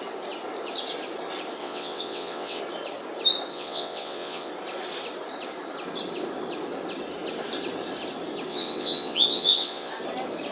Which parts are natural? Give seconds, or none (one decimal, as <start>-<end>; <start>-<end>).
0.0-1.6; 2.6-3.5; 4.5-8.5; 9.9-10.5